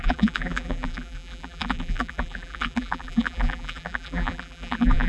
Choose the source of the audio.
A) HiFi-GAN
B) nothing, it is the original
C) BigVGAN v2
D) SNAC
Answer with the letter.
C